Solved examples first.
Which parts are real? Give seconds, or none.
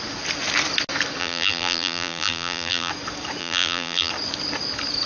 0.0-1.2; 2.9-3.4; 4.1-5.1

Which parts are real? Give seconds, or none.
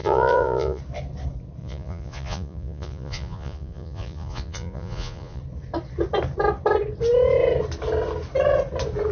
0.8-1.6; 5.4-9.1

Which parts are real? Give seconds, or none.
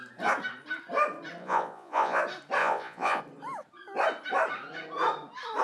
0.0-1.4; 2.2-2.6; 3.2-5.6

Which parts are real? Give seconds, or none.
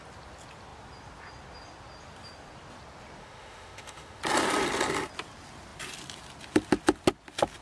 0.0-3.2; 4.2-7.6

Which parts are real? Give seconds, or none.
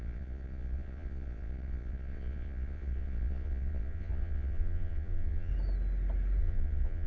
5.5-6.4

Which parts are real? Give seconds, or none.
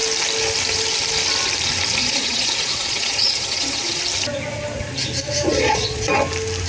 0.0-2.0; 4.0-5.5; 6.1-6.7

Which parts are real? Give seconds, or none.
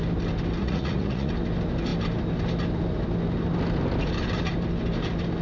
0.0-0.6; 1.3-5.4